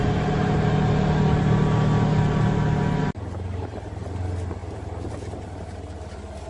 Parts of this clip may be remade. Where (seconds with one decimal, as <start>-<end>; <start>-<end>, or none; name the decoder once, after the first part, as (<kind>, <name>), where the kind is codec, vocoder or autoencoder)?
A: none